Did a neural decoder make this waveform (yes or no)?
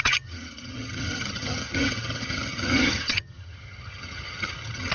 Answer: yes